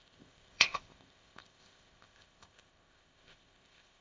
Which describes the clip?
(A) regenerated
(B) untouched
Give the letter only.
A